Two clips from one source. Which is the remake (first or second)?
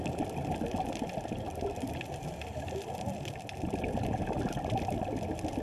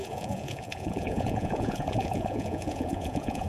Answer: second